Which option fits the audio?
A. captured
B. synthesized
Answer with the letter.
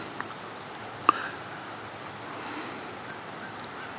A